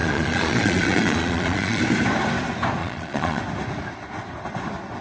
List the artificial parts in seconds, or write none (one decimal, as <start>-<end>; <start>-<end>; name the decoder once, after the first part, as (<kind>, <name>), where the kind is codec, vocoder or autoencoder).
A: 0.0-1.8 (vocoder, Vocos); 2.8-3.4

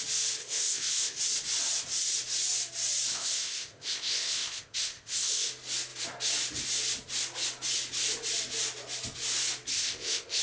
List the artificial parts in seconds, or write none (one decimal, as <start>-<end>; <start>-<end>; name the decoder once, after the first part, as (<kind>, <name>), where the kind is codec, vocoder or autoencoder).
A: 0.4-1.2 (codec, ZipCodec); 3.1-5.5; 9.7-10.4

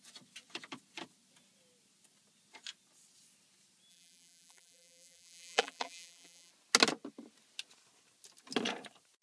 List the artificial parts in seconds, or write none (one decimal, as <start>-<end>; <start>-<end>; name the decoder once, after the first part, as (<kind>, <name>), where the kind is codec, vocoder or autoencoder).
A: 3.9-6.5 (vocoder, BigVGAN v2)

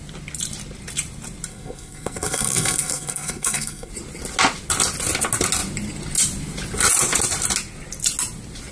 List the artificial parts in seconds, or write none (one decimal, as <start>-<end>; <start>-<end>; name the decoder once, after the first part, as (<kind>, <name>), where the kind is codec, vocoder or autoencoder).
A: 1.5-3.9 (codec, SNAC)

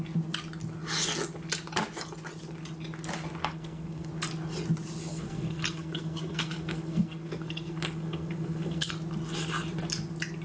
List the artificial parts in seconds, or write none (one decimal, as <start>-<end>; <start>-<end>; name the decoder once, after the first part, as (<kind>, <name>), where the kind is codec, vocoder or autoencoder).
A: 3.4-4.1 (codec, SNAC); 5.1-8.9

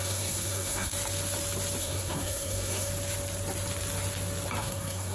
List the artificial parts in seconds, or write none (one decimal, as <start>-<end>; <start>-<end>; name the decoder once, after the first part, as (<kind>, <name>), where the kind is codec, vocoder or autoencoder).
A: 0.0-0.9 (codec, SNAC); 1.8-2.9; 4.6-5.1

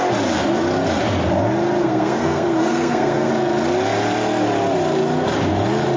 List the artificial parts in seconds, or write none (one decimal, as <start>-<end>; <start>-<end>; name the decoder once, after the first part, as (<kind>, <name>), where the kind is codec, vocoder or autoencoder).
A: 1.8-3.3 (codec, SNAC)

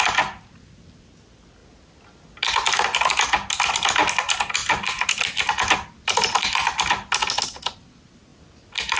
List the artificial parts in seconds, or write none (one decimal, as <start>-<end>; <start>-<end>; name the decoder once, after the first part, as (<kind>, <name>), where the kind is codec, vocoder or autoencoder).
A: none